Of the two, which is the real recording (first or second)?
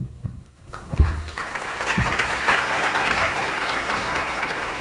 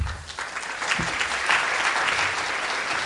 second